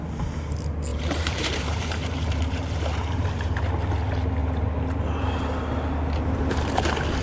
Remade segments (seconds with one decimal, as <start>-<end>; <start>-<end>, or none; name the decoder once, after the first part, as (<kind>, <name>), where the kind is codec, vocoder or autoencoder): 0.9-3.6 (vocoder, BigVGAN v2)